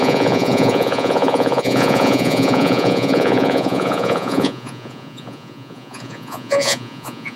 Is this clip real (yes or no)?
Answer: no